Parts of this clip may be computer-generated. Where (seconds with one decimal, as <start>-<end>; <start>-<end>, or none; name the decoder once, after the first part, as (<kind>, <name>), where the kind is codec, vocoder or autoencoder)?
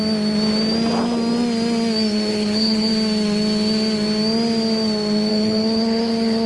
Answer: 2.3-2.9 (codec, HILCodec); 5.3-6.5